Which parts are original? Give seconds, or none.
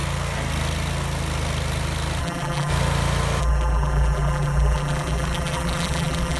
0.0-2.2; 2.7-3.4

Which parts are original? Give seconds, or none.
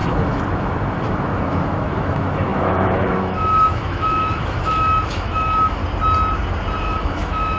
5.8-6.8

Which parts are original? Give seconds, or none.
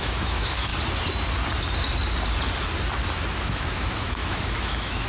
0.7-3.4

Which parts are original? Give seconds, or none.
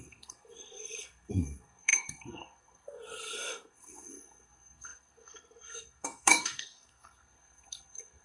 none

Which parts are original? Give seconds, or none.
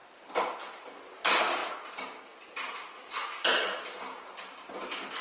0.6-5.2